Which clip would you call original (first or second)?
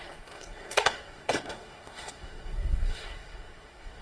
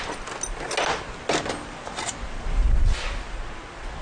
second